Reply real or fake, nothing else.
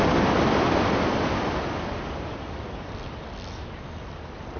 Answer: real